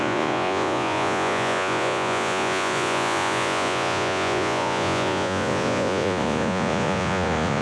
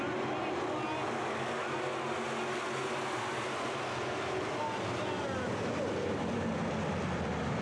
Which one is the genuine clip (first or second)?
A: second